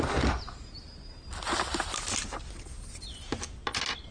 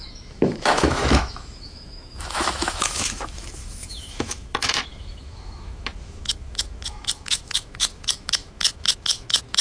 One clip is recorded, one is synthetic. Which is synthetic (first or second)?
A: second